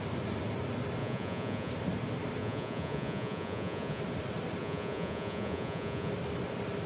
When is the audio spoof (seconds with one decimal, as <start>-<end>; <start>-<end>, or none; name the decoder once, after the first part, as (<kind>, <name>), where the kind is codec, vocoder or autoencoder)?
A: 1.0-1.7 (vocoder, Vocos); 2.4-4.0; 4.6-6.1